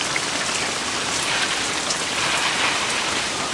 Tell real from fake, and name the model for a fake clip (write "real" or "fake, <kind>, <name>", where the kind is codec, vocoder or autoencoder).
real